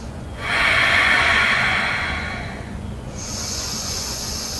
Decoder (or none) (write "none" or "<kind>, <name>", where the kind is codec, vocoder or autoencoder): vocoder, Vocos